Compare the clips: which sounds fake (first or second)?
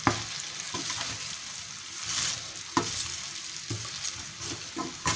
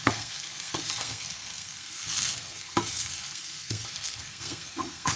second